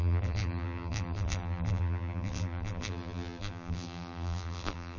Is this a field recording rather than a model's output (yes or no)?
no